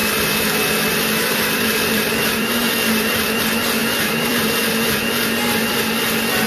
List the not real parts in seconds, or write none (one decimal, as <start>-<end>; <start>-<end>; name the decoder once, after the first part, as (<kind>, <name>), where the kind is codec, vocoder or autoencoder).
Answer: 0.0-3.4 (vocoder, BigVGAN v2); 3.8-4.7